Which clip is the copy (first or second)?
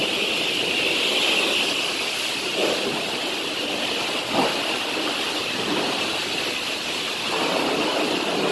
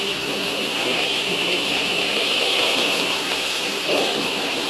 second